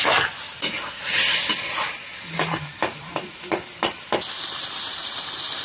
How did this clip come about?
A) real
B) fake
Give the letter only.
A